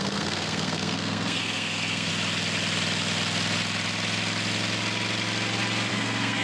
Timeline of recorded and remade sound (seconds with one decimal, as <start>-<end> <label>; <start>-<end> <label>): 0.0-2.1 remade; 2.1-5.9 recorded; 5.9-6.4 remade